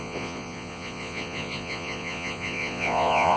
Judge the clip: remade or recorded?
remade